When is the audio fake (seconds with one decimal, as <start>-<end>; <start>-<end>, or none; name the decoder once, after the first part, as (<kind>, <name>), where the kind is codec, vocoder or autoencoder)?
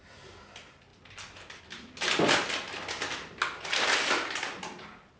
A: 0.9-1.6 (vocoder, BigVGAN v2)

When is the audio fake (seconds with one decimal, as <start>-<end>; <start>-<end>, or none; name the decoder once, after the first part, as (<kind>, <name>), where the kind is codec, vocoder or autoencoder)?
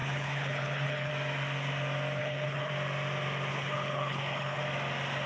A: 0.0-1.1 (codec, HILCodec); 2.2-2.7; 3.5-4.6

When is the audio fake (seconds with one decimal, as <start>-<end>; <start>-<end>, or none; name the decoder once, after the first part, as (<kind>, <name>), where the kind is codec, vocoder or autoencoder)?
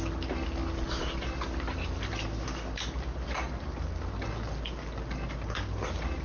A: none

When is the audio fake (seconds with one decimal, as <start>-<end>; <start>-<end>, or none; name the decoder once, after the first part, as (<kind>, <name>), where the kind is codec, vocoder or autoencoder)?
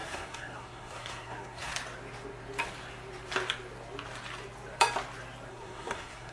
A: 0.0-1.7 (codec, SNAC); 5.5-6.3